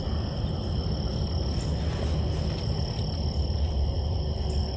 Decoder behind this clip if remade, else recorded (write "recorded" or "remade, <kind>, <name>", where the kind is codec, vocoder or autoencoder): recorded